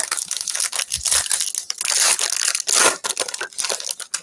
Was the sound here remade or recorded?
recorded